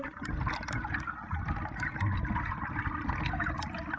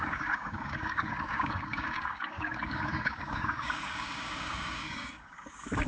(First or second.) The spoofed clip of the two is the second